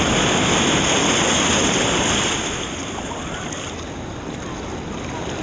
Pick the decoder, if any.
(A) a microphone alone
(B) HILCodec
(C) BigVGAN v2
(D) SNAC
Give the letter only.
A